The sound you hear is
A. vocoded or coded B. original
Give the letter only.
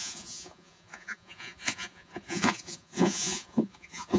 A